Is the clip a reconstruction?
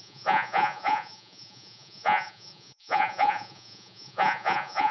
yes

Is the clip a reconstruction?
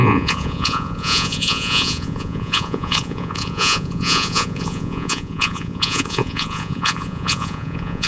yes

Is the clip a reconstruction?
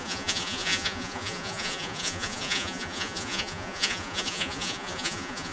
yes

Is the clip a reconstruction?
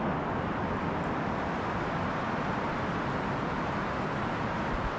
no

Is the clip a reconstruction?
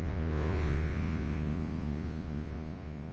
yes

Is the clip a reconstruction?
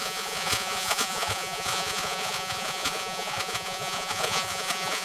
yes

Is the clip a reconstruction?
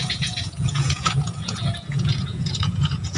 yes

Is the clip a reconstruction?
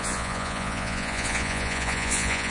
yes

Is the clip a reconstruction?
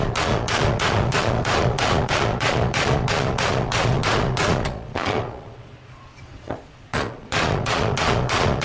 yes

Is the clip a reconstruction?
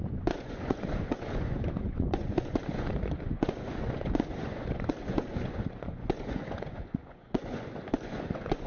yes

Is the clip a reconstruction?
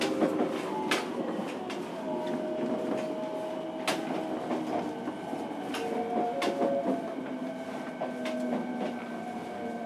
no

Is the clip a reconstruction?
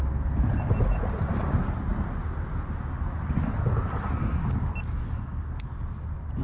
no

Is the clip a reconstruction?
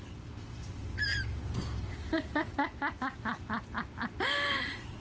no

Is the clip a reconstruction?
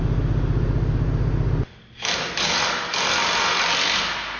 no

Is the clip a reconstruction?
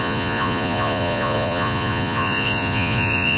yes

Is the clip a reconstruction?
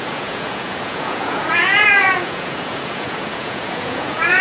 yes